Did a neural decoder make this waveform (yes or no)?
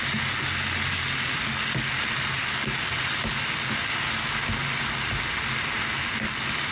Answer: no